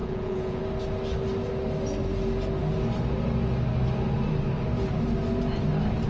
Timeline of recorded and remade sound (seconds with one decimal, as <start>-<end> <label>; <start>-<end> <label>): 0.0-0.6 remade; 0.6-6.1 recorded